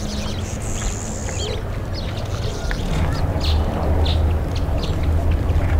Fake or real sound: real